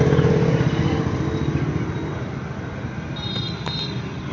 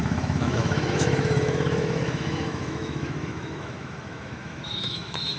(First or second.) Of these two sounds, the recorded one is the first